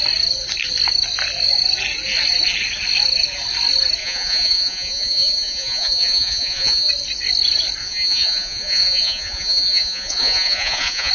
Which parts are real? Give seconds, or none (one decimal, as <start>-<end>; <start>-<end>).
0.0-4.0; 6.9-7.8